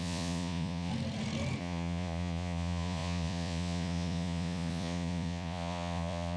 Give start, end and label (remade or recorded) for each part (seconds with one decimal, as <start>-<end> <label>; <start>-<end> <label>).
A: 0.0-0.9 remade; 0.9-1.6 recorded; 1.6-6.4 remade